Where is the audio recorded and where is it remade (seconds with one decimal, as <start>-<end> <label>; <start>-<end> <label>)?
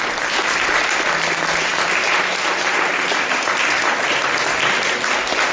0.0-5.5 recorded